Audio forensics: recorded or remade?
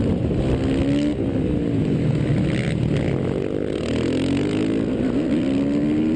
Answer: recorded